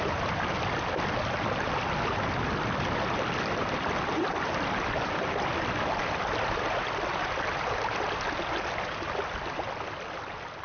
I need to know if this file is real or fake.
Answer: real